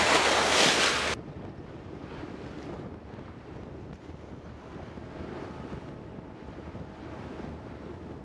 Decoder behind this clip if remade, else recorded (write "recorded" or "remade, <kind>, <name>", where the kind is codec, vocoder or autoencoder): recorded